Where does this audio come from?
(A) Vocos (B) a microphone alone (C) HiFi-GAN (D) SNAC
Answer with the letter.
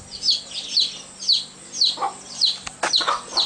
B